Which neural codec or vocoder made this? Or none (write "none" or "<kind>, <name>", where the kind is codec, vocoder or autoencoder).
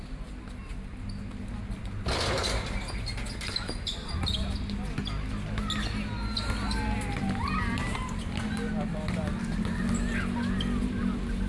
none